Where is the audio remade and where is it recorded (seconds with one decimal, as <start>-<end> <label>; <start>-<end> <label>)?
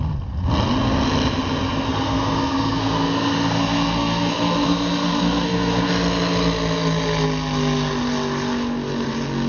0.0-1.9 recorded; 1.9-5.9 remade; 5.9-9.5 recorded